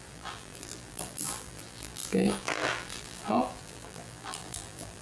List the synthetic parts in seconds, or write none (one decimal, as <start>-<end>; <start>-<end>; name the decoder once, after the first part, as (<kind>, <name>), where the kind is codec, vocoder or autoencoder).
0.0-5.0 (vocoder, BigVGAN v2)